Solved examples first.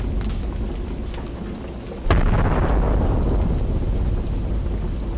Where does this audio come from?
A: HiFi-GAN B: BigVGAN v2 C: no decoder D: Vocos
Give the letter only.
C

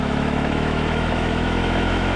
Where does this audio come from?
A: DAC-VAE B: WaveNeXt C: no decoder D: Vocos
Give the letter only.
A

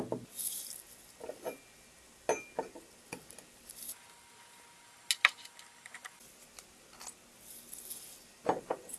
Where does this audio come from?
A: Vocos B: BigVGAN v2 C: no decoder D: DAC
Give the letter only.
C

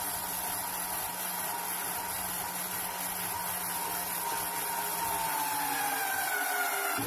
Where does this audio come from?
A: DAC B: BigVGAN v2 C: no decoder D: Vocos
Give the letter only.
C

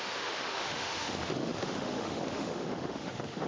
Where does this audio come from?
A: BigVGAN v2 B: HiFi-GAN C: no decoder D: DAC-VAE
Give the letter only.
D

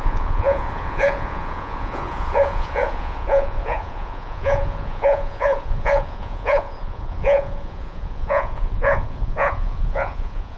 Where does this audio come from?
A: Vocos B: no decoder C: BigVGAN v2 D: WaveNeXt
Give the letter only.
A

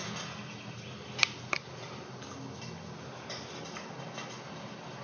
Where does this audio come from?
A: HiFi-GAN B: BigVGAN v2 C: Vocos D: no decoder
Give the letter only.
D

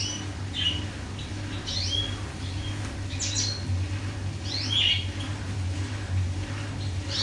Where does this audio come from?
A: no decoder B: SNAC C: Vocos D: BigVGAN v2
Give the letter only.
A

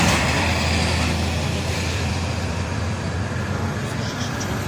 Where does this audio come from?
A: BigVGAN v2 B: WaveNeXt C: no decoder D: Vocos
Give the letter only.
A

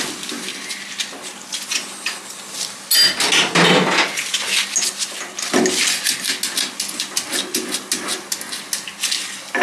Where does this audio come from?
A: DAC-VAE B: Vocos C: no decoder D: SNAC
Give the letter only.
C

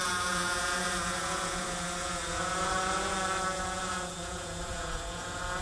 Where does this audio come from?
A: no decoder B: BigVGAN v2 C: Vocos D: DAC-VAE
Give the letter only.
C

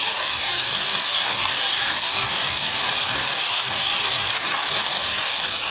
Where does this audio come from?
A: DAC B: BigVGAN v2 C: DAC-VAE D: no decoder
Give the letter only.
A